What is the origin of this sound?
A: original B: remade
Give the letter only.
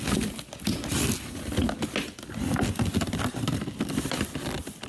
A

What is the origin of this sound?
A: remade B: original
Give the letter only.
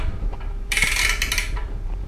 A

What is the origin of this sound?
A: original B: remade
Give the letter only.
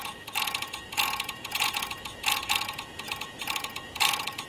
B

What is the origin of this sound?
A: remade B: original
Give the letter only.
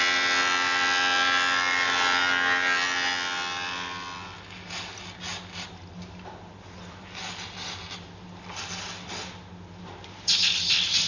B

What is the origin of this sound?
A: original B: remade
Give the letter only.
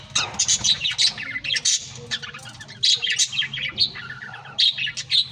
A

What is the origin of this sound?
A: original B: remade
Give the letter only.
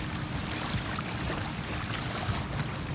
A